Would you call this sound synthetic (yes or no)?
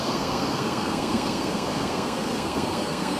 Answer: yes